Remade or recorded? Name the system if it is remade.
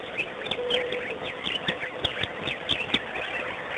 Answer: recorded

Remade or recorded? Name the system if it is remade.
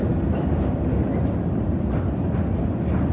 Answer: recorded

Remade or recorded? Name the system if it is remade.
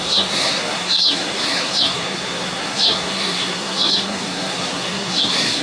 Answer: remade, codec, SNAC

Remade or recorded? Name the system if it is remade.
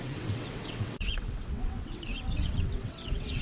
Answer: remade, vocoder, WaveNeXt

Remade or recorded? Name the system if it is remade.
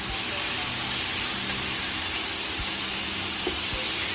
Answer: recorded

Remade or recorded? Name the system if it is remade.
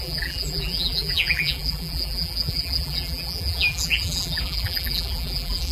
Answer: remade, vocoder, BigVGAN v2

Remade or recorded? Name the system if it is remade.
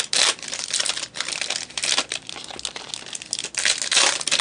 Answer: recorded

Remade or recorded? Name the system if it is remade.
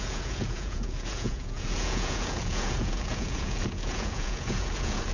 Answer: remade, vocoder, Vocos